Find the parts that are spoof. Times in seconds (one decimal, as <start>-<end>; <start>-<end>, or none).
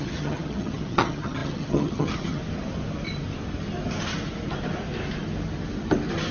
0.0-2.4